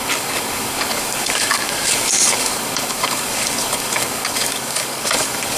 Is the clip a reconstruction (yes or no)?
yes